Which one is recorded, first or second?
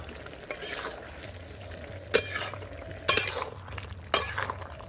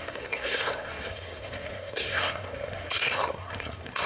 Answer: first